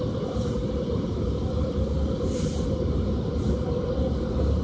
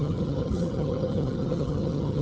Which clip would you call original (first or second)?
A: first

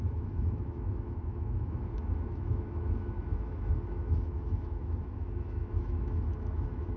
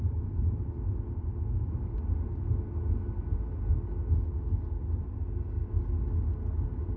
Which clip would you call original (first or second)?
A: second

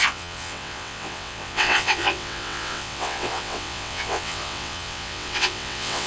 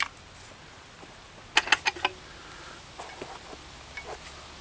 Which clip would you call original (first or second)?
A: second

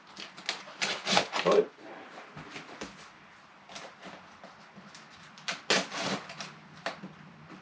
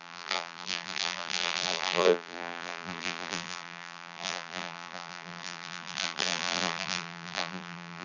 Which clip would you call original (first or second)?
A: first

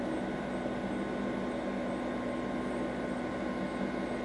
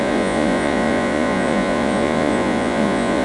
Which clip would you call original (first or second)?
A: first